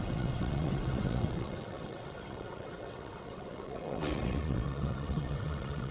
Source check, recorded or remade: remade